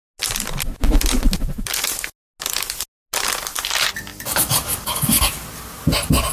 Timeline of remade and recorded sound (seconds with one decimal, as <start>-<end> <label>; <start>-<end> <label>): 0.0-4.1 recorded; 4.1-5.2 remade; 5.2-6.3 recorded